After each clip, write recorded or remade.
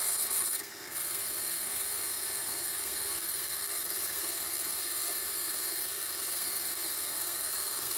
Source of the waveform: remade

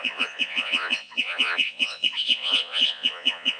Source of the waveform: remade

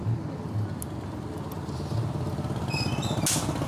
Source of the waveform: recorded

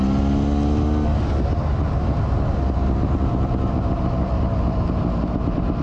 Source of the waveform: recorded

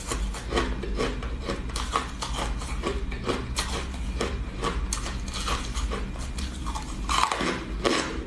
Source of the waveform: recorded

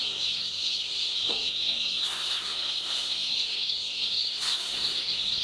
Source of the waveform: remade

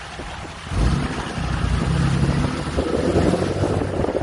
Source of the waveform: recorded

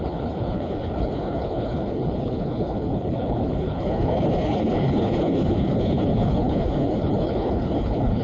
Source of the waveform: remade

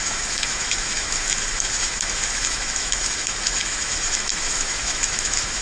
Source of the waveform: remade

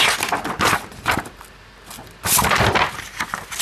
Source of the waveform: recorded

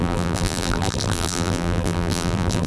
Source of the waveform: remade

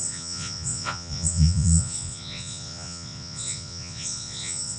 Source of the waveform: remade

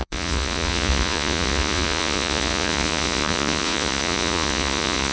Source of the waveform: remade